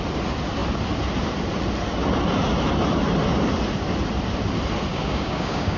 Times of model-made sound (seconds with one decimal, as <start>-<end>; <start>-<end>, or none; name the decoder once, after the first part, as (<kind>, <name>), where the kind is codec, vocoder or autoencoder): 4.9-5.8 (codec, DAC)